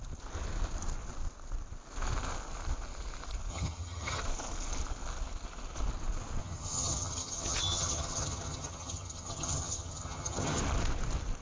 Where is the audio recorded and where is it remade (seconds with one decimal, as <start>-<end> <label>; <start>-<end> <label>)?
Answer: 0.0-3.5 recorded; 3.5-4.2 remade; 4.2-6.4 recorded; 6.4-10.6 remade; 10.6-11.4 recorded